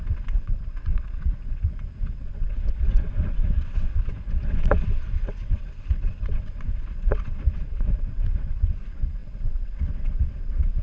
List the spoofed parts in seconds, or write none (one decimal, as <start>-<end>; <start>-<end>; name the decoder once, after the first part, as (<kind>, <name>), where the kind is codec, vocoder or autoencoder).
0.0-10.8 (vocoder, WaveNeXt)